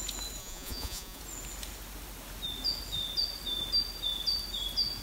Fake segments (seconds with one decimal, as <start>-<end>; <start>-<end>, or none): 0.4-1.2